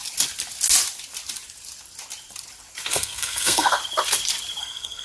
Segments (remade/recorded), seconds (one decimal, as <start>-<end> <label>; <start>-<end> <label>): 0.0-2.9 recorded; 2.9-3.8 remade; 3.8-4.6 recorded; 4.6-5.0 remade

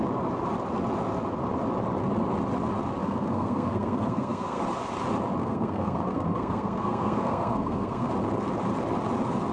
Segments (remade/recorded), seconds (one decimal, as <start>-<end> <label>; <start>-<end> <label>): 0.0-3.0 recorded; 3.0-4.6 remade; 4.6-5.4 recorded; 5.4-8.1 remade; 8.1-9.5 recorded

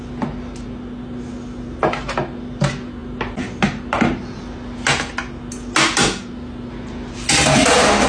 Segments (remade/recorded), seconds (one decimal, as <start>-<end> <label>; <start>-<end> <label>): 0.0-8.1 recorded

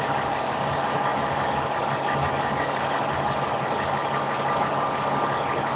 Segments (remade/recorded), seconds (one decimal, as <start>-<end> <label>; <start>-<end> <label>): 0.0-5.8 remade

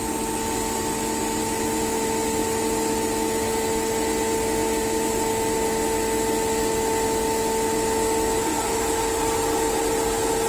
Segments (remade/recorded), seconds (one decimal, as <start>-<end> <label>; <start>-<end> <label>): 0.0-10.5 recorded

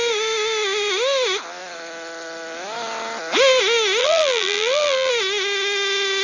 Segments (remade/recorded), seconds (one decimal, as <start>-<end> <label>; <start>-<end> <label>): 0.0-4.0 recorded; 4.0-5.1 remade; 5.1-6.2 recorded